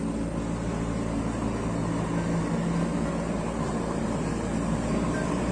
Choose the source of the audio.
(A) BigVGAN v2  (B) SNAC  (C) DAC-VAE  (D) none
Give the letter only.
D